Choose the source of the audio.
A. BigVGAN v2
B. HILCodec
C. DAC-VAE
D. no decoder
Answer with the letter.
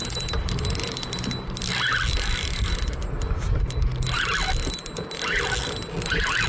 D